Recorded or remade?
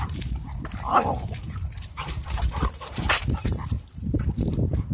remade